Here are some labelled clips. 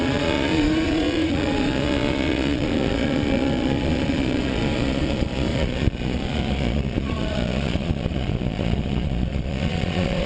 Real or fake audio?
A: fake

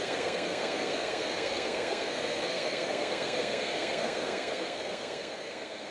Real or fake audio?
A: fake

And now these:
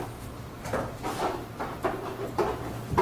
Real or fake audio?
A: fake